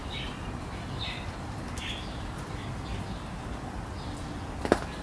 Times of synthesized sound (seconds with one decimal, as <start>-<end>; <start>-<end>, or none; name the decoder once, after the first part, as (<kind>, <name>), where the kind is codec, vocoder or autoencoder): none